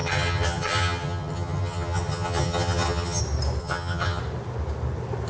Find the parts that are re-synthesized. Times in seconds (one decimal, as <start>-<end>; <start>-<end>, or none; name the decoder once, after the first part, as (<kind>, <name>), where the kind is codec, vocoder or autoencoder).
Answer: 0.0-3.2 (vocoder, HiFi-GAN); 3.6-4.2